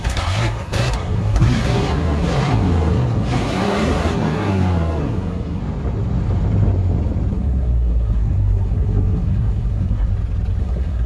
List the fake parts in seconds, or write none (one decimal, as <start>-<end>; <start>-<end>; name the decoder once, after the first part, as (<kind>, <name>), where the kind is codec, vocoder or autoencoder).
0.0-5.6 (codec, SNAC); 7.3-10.1; 10.6-11.1